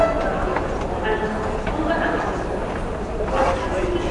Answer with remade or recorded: recorded